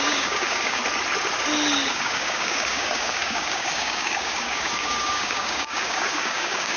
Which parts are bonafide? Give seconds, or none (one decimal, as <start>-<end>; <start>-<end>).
0.8-1.9